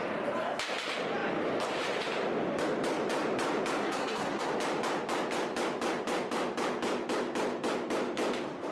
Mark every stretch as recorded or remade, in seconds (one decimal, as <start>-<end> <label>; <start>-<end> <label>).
0.0-3.8 recorded; 3.8-4.5 remade; 4.5-8.7 recorded